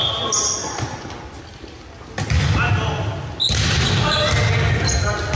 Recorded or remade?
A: recorded